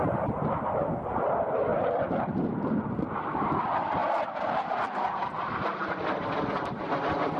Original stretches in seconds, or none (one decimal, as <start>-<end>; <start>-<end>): 1.7-2.4; 4.0-5.1